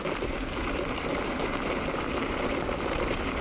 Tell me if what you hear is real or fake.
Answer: real